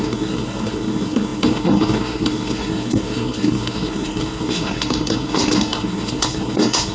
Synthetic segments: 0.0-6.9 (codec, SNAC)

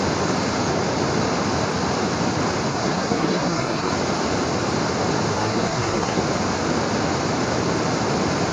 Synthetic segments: 2.7-3.9 (codec, SNAC); 5.3-6.2

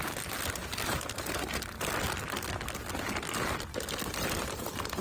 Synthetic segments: none

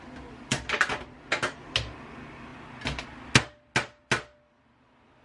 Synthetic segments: none

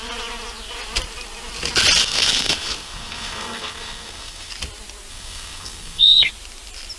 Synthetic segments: 2.0-4.5 (codec, SNAC); 5.1-6.3

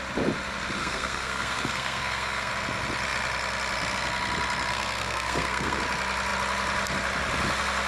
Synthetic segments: 0.8-2.5 (codec, SNAC); 4.7-5.8